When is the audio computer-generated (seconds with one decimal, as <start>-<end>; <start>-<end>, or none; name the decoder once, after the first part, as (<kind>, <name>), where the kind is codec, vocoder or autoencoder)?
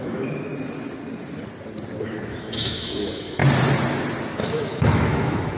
0.0-0.5 (autoencoder, DAC-VAE); 2.0-3.4; 4.3-5.6